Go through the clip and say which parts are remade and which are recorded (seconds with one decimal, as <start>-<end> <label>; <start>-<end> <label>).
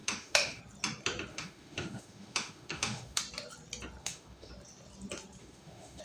0.0-0.6 remade; 0.6-1.3 recorded; 1.3-3.2 remade; 3.2-4.0 recorded; 4.0-4.5 remade; 4.5-5.4 recorded; 5.4-6.0 remade